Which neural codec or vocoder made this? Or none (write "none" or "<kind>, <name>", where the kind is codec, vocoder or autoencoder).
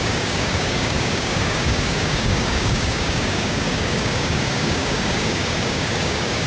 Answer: codec, DAC